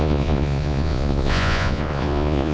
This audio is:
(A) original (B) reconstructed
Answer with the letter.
B